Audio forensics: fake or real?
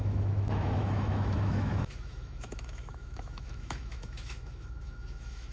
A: fake